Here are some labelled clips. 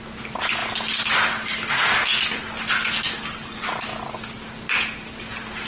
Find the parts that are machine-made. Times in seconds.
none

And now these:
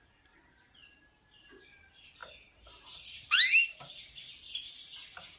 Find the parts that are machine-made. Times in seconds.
none

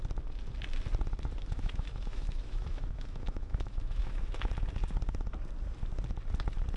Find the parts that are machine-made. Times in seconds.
1.4-4.5 (autoencoder, DAC-VAE)

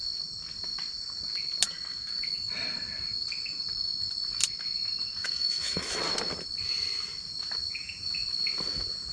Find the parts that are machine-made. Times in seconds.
5.2-6.0 (autoencoder, DAC-VAE)

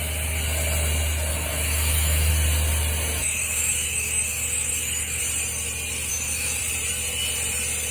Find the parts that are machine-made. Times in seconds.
1.3-2.3 (autoencoder, DAC-VAE); 3.2-5.2; 6.1-6.6

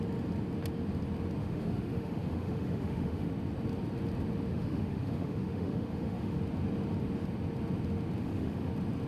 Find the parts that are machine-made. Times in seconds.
1.4-3.3 (autoencoder, DAC-VAE); 4.5-6.4; 8.2-8.7